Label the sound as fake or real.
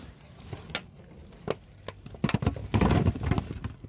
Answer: real